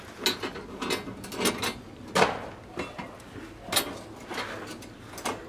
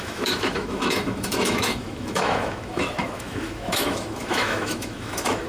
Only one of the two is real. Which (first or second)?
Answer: first